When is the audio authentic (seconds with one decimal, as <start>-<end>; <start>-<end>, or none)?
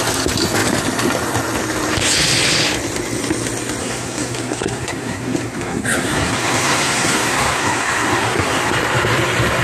0.0-3.8; 8.7-9.6